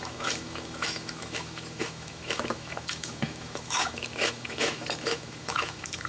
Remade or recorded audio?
remade